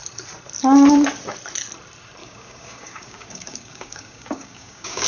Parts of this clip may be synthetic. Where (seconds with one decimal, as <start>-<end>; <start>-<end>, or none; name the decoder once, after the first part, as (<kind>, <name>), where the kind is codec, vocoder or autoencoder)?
2.2-5.1 (codec, DAC)